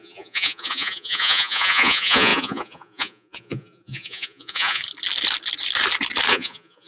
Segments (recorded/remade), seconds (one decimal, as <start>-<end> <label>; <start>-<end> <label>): 0.0-4.8 remade; 4.8-6.3 recorded; 6.3-6.9 remade